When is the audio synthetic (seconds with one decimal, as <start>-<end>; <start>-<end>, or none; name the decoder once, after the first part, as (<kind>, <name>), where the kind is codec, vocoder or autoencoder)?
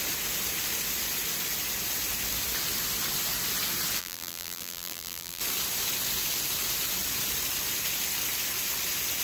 4.0-5.4 (vocoder, BigVGAN v2)